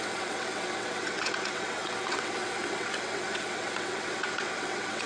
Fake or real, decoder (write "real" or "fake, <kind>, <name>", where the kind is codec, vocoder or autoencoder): fake, vocoder, WaveNeXt